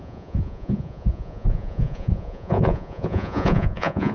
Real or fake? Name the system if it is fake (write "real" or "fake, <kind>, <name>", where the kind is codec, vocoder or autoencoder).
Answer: fake, vocoder, Vocos